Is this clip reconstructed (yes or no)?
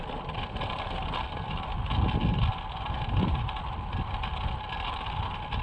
no